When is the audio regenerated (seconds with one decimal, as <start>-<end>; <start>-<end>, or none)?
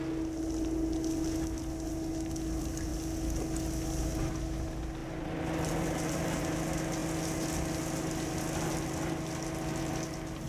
none